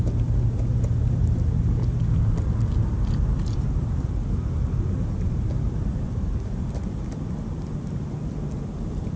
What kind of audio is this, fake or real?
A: real